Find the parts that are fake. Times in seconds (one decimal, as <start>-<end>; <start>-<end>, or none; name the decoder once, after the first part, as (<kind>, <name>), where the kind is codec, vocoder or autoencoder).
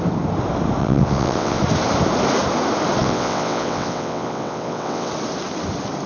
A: 0.8-1.6 (vocoder, WaveNeXt); 3.0-5.1